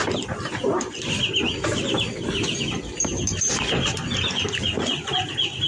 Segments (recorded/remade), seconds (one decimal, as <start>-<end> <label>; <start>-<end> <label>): 0.0-5.7 recorded